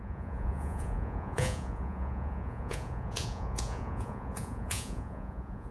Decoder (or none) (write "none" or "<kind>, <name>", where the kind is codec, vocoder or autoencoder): vocoder, Vocos